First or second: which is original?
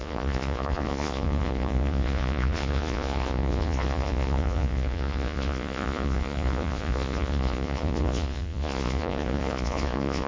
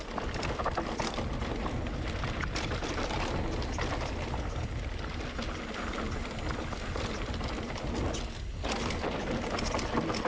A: second